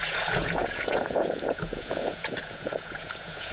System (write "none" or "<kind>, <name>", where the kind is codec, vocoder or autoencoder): vocoder, Vocos